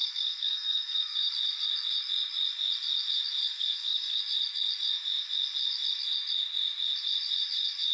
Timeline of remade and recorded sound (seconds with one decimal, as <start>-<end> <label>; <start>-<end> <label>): 0.0-1.3 remade; 1.3-3.4 recorded; 3.4-4.2 remade; 4.2-7.9 recorded